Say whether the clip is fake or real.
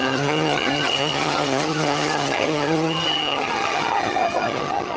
fake